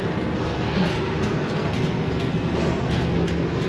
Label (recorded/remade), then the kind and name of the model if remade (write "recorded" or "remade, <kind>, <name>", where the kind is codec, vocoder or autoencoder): remade, codec, SNAC